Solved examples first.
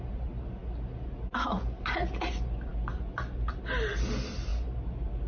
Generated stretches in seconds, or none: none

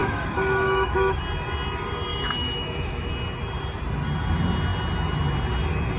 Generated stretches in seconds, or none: 0.0-1.2 (autoencoder, DAC-VAE); 2.1-3.1

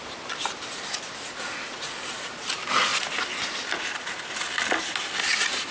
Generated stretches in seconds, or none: 1.5-2.4 (vocoder, Vocos)

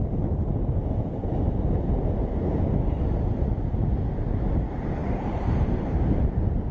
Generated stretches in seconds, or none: 5.0-6.7 (vocoder, BigVGAN v2)

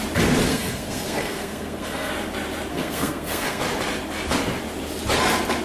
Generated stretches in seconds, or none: 0.5-2.1 (codec, SNAC); 2.7-3.6